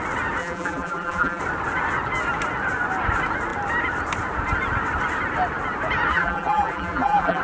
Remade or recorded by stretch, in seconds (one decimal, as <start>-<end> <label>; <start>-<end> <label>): 0.0-0.4 recorded; 0.4-1.4 remade; 1.4-6.1 recorded; 6.1-7.4 remade